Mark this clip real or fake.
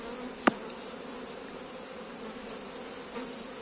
real